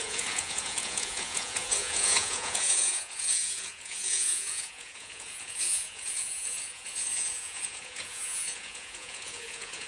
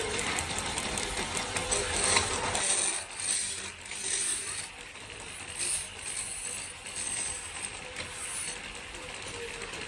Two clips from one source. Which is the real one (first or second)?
second